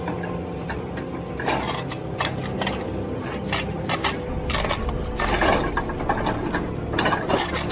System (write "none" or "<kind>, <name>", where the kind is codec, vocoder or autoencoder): none